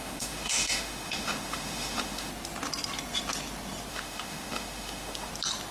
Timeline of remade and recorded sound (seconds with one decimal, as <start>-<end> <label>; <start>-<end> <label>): 0.0-2.3 remade; 2.3-3.9 recorded; 3.9-5.3 remade; 5.3-5.7 recorded